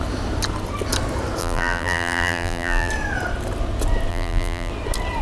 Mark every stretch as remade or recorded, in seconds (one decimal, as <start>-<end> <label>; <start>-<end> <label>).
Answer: 0.0-1.4 recorded; 1.4-2.9 remade; 2.9-4.1 recorded; 4.1-4.7 remade; 4.7-5.2 recorded